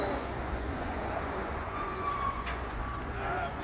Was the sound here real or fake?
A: fake